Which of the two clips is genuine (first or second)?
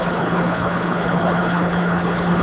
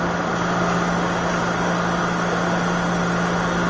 second